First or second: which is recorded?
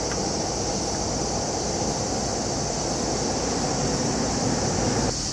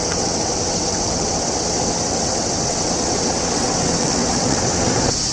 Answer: first